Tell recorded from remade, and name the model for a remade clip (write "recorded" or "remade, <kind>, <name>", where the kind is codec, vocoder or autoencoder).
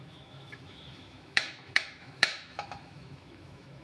remade, autoencoder, DAC-VAE